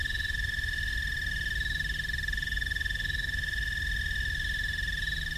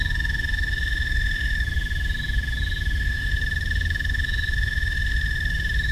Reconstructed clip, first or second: second